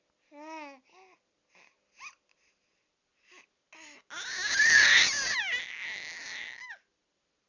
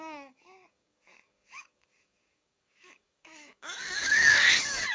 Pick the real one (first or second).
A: first